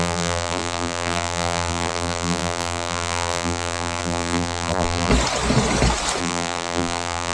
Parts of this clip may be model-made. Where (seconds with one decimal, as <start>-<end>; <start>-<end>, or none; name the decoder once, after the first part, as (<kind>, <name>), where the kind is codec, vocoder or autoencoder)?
0.0-5.1 (vocoder, BigVGAN v2); 6.2-7.3